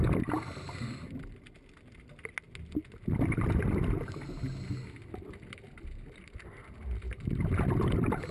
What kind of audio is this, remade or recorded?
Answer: recorded